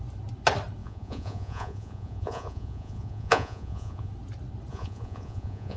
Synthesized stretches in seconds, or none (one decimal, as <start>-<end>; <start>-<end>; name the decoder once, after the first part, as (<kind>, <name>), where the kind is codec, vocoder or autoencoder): 0.8-4.1 (vocoder, Vocos); 4.7-5.8